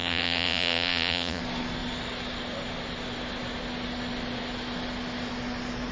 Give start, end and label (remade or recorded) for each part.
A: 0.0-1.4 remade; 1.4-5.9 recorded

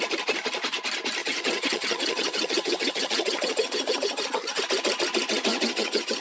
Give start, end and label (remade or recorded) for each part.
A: 0.0-1.2 recorded; 1.2-4.6 remade; 4.6-5.5 recorded; 5.5-6.2 remade

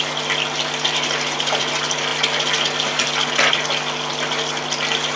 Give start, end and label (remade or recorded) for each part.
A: 0.0-5.2 recorded